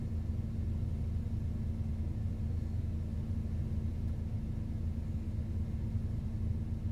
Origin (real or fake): real